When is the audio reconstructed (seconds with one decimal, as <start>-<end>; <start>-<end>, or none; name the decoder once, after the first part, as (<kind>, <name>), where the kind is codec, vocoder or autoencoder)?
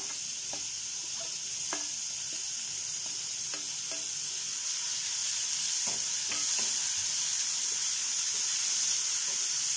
none